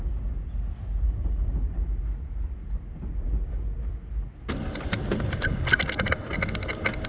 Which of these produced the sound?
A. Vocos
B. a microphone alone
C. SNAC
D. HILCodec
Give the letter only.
B